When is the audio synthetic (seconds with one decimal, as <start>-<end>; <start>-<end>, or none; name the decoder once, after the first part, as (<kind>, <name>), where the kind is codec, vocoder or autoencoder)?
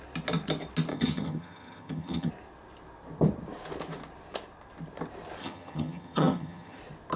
0.9-2.3 (vocoder, HiFi-GAN); 5.4-6.8